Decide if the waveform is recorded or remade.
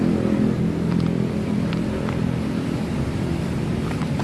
remade